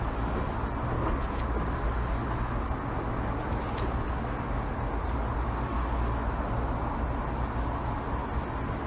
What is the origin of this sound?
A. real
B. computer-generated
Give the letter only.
A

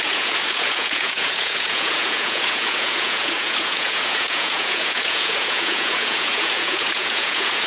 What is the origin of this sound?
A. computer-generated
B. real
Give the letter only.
A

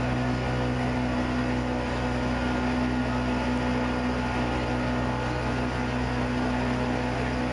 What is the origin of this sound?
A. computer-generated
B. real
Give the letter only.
B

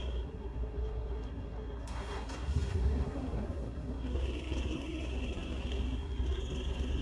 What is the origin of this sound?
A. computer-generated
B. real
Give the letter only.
A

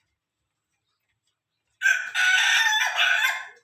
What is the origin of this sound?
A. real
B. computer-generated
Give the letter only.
A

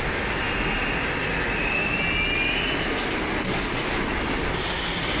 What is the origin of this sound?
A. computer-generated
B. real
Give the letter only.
B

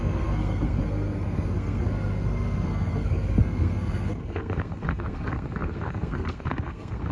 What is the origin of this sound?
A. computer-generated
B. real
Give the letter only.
A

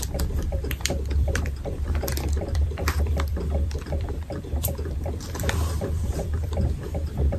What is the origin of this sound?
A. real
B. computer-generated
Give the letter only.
B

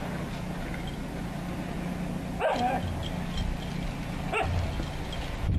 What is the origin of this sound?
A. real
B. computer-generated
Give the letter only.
A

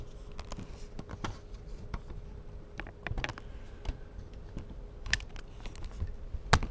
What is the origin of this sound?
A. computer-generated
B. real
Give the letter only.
B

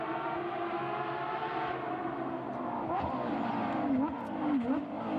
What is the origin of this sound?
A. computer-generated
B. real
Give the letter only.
B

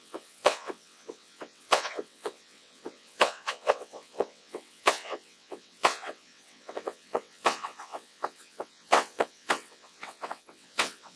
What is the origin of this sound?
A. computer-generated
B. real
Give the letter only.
A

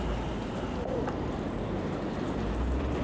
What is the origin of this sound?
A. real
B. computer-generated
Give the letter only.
B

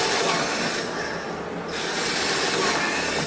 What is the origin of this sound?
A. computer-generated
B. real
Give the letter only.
B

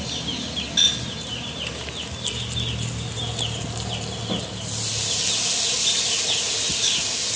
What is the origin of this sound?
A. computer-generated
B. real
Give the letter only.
B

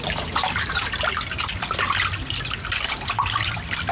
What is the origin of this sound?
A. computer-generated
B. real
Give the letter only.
B